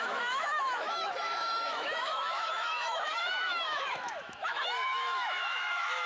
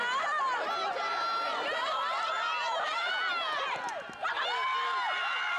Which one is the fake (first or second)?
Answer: first